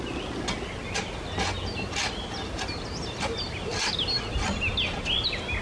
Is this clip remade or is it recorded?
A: recorded